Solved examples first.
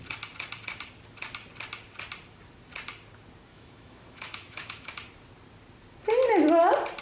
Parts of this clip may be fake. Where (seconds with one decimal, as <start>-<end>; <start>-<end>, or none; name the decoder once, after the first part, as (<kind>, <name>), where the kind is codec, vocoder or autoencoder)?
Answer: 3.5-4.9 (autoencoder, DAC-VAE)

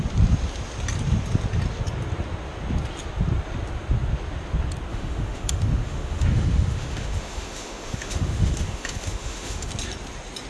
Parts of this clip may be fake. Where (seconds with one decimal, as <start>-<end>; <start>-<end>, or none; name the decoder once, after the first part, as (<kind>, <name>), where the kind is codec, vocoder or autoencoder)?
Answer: 4.9-9.7 (autoencoder, DAC-VAE)

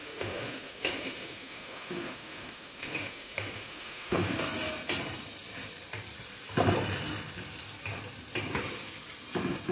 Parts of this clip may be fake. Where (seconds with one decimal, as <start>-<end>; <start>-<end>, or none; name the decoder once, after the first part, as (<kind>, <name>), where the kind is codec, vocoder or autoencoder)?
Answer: 0.0-4.4 (autoencoder, DAC-VAE)

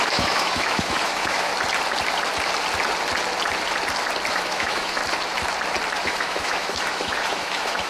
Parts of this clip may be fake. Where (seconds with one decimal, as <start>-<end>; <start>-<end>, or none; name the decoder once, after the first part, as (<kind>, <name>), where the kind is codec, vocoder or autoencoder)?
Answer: 0.0-1.5 (autoencoder, DAC-VAE); 4.3-5.0; 6.0-7.9